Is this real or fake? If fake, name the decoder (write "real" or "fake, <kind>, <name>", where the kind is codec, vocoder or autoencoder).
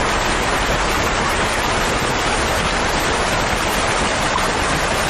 real